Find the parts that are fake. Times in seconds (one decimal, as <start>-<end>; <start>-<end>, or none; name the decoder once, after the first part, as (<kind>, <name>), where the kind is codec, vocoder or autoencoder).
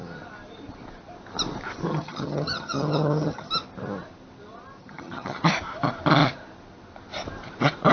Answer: 1.9-3.5 (vocoder, HiFi-GAN); 4.8-5.4